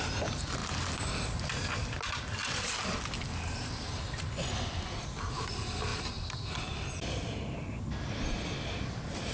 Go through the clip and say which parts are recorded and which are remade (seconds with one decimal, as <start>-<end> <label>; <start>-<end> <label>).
0.0-9.3 recorded